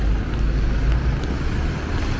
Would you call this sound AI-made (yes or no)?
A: no